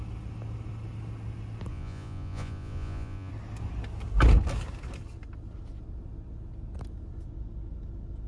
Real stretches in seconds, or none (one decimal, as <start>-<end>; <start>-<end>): 0.0-1.7; 3.3-8.3